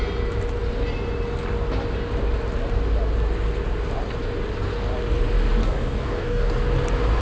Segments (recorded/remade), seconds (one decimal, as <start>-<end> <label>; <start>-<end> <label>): 0.0-5.6 recorded; 5.6-6.5 remade; 6.5-7.2 recorded